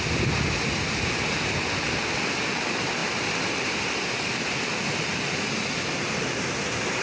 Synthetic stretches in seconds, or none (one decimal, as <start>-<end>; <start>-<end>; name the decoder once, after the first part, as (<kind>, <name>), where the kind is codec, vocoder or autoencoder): none